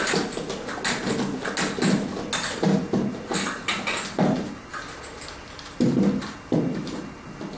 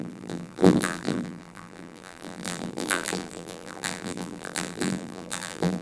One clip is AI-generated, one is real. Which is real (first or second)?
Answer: first